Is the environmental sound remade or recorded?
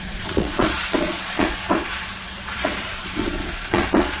remade